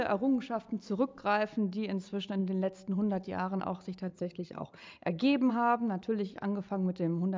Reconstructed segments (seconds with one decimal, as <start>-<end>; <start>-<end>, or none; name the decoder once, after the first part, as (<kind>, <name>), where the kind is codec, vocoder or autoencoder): 4.1-5.5 (vocoder, HiFi-GAN)